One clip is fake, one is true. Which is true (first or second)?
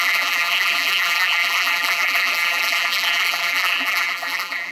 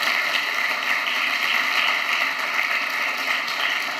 second